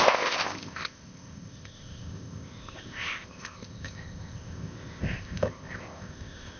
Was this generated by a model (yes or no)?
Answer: yes